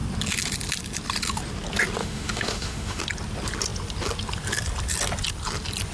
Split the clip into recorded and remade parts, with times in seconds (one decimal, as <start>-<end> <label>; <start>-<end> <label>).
0.0-2.0 recorded; 2.0-3.0 remade; 3.0-5.9 recorded